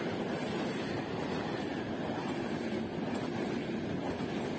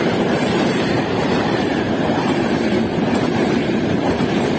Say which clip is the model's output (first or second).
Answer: second